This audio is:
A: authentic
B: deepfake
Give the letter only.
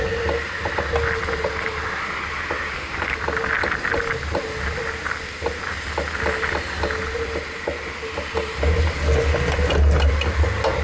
A